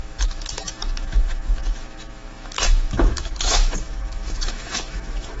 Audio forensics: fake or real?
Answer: fake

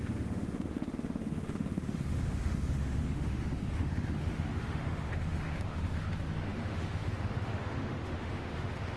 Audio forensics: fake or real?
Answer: fake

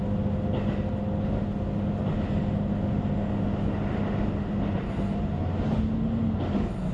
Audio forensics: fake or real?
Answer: real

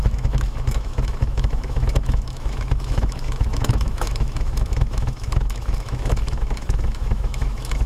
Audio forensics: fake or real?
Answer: fake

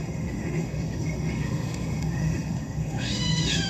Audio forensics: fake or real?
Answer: fake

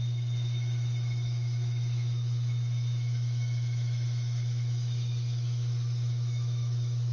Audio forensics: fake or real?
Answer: fake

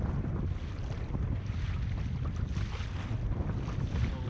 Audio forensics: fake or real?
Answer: real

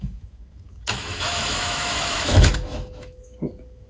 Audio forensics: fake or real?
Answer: fake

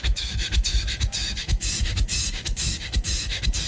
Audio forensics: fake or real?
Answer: fake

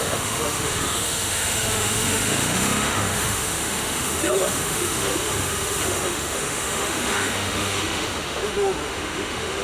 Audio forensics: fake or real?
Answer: fake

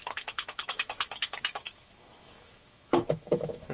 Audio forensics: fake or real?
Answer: fake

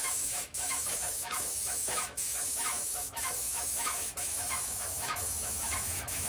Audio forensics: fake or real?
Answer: fake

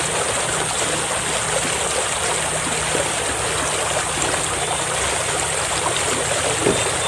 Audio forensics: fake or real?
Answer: real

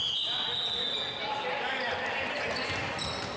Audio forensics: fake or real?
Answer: real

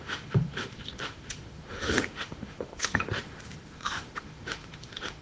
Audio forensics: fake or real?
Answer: fake